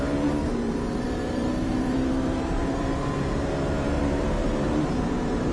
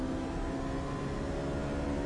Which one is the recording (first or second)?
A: second